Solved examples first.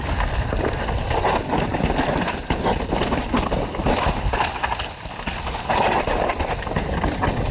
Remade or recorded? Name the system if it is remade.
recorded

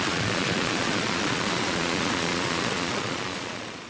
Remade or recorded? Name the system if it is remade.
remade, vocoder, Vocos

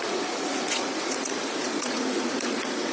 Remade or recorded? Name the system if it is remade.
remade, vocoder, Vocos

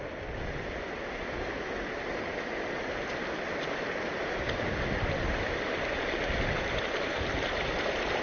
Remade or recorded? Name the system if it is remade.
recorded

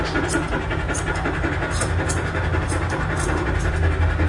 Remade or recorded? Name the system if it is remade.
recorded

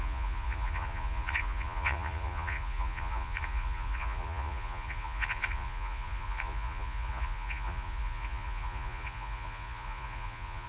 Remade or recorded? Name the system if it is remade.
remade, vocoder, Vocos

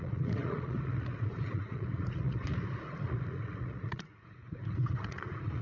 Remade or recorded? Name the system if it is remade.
remade, vocoder, Vocos